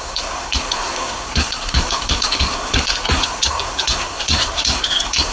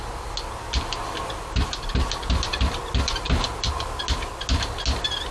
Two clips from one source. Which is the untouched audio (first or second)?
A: second